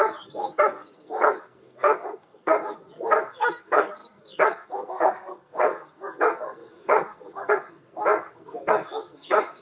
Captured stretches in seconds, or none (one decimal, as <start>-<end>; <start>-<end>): none